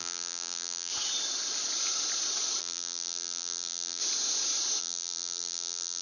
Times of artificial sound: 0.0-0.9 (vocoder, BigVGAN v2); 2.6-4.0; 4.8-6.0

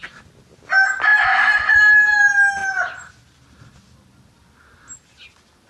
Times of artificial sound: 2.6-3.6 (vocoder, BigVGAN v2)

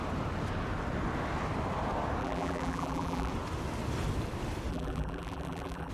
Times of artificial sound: 2.2-3.3 (vocoder, BigVGAN v2); 4.7-5.9

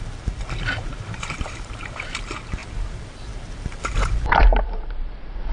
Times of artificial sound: 0.0-5.5 (vocoder, BigVGAN v2)